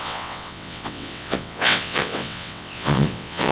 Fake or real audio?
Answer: fake